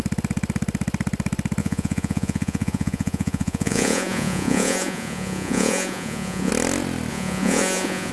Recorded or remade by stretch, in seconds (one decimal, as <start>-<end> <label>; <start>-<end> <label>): 0.0-1.6 recorded; 1.6-6.5 remade; 6.5-7.1 recorded; 7.1-8.1 remade